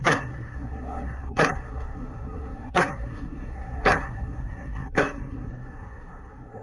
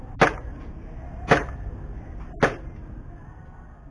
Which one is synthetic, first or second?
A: first